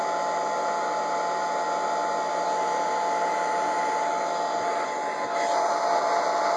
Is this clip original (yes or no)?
yes